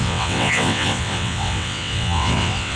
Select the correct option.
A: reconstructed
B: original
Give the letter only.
A